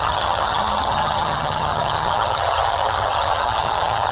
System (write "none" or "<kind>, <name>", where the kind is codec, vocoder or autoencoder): vocoder, HiFi-GAN